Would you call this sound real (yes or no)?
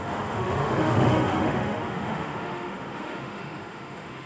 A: no